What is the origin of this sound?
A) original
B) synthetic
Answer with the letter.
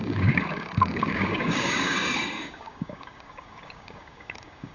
B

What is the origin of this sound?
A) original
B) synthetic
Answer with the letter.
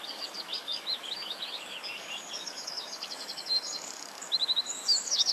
B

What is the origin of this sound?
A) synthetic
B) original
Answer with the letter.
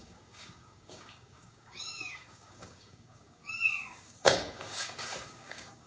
A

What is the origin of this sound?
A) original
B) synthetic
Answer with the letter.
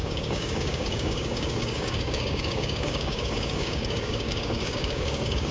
B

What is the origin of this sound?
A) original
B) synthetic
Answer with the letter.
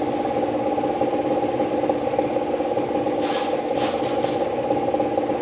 A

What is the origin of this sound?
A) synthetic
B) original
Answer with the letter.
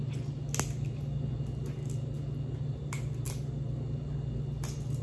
B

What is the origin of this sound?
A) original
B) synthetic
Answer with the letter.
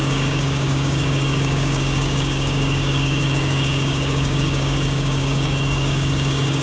B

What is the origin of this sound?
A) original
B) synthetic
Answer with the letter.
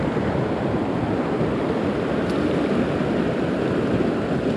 A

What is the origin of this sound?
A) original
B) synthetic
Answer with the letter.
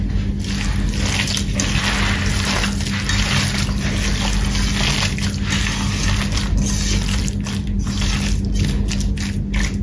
A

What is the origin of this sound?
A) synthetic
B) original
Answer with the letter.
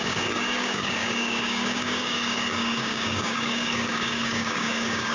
A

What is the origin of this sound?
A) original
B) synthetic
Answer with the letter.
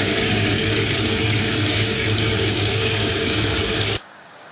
B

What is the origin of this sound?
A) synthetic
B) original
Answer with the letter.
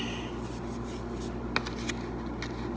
B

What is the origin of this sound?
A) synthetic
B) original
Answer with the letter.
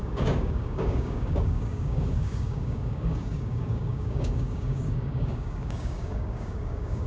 A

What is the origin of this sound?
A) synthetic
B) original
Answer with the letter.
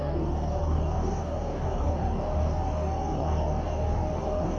A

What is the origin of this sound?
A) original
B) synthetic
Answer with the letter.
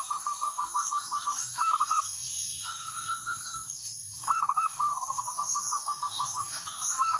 B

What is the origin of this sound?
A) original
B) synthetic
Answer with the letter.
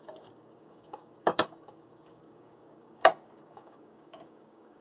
B